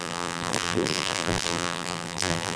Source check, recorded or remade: remade